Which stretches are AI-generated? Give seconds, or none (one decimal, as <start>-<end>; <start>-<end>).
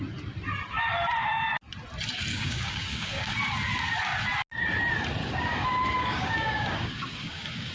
2.3-3.3; 5.2-7.7